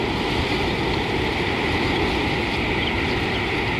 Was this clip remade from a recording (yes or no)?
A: no